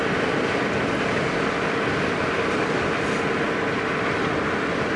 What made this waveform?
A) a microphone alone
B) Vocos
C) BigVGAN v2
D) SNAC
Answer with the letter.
A